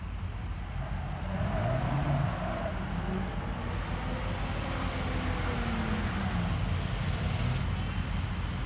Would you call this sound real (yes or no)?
yes